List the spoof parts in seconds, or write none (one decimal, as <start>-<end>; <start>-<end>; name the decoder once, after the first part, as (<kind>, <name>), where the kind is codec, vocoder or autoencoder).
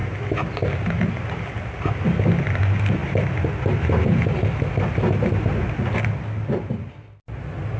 none